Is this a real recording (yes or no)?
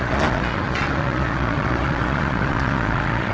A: no